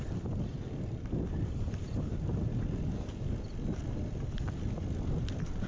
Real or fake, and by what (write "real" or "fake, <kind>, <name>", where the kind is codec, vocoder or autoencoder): real